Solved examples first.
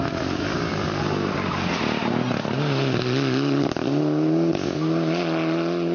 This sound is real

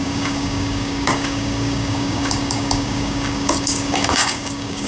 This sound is fake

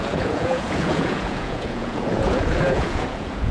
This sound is fake